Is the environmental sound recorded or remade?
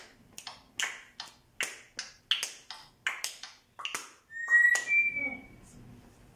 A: recorded